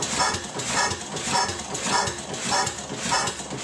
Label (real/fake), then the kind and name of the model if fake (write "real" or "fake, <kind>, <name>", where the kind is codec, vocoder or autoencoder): real